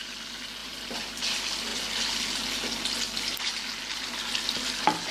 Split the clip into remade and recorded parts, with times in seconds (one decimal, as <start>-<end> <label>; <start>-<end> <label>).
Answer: 0.0-0.6 recorded; 0.6-1.2 remade; 1.2-5.1 recorded